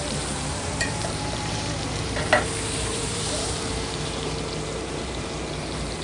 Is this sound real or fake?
fake